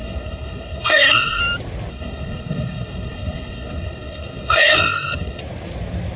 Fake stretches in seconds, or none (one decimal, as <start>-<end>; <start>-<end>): 0.0-1.4; 1.9-5.4